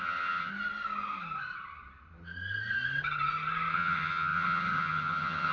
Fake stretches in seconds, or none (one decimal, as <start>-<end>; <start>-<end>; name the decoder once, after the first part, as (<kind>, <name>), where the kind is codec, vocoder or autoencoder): 0.0-0.5 (vocoder, HiFi-GAN); 3.7-5.5